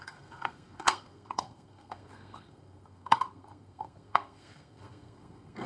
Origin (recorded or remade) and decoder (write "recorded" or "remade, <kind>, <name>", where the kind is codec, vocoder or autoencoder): remade, codec, SNAC